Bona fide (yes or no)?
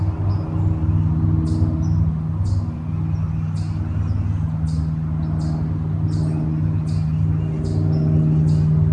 yes